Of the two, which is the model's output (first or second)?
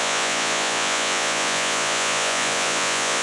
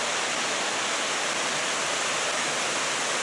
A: first